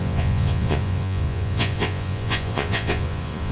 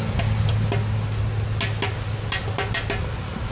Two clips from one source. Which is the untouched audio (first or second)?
second